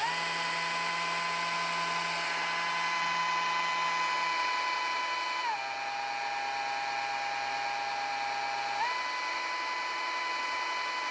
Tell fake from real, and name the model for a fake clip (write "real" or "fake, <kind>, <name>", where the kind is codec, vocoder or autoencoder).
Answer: real